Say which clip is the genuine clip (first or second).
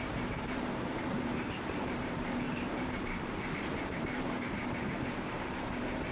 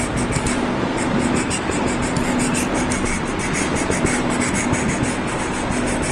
second